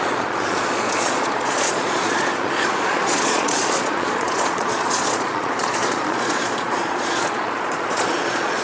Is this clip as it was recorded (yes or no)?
no